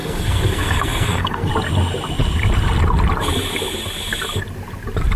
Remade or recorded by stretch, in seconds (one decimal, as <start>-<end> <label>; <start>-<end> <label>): 0.0-1.5 remade; 1.5-5.2 recorded